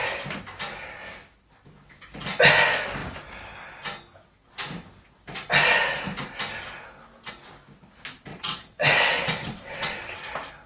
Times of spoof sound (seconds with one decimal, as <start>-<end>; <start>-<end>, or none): 8.3-10.2